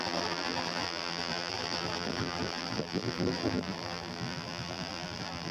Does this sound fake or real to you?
fake